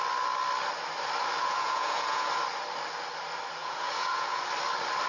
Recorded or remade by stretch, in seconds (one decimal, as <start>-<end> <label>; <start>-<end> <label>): 0.0-1.4 recorded; 1.4-2.3 remade; 2.3-3.6 recorded; 3.6-4.4 remade; 4.4-5.1 recorded